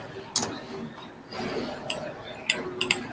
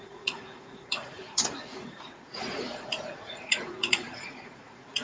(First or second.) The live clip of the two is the first